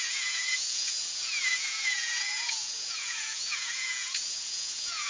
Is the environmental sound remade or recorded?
remade